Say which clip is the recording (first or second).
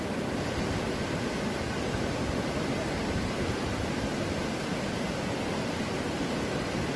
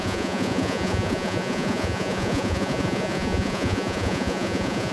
first